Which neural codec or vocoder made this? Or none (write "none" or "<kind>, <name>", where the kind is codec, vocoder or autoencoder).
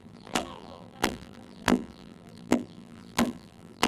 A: vocoder, BigVGAN v2